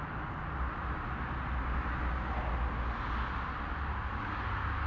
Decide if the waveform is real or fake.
real